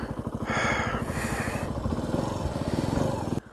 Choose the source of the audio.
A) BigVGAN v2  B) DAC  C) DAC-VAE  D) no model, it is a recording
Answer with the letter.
D